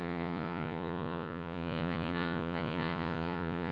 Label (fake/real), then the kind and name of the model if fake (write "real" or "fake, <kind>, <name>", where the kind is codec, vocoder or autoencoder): fake, vocoder, Vocos